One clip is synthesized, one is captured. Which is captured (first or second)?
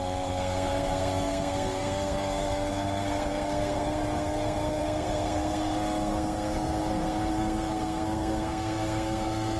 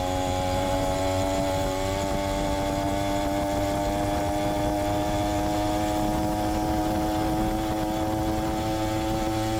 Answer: second